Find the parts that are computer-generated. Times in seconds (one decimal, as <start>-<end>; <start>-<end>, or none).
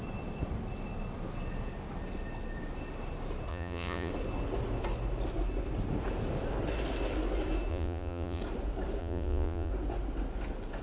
3.5-4.1; 7.7-8.4; 9.0-9.7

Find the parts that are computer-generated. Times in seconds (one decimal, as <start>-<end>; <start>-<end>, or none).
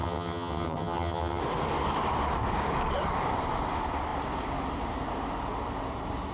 0.0-1.4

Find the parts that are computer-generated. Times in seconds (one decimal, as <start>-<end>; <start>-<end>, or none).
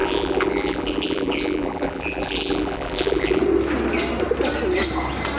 0.0-3.4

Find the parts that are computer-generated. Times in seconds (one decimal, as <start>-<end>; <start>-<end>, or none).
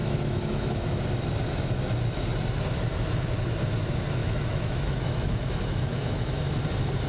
0.0-1.0; 4.2-6.5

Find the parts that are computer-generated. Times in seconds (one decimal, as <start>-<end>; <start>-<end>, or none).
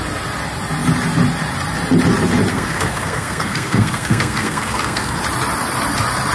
2.5-5.2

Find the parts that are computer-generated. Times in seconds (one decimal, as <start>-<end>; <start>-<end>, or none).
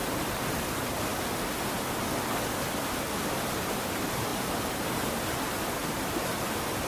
0.0-0.6; 4.3-5.2; 5.8-6.3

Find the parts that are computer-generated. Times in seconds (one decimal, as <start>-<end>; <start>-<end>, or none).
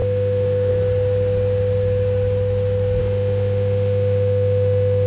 0.0-0.7; 3.0-5.1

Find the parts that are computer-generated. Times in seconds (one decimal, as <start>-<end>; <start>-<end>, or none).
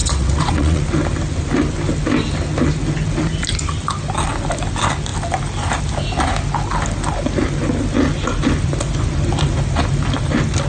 0.0-0.8